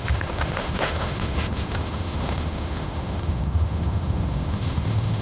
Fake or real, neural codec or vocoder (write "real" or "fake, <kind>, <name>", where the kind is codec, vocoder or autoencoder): fake, autoencoder, DAC-VAE